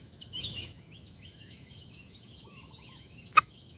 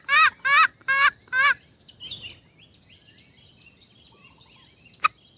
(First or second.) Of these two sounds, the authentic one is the second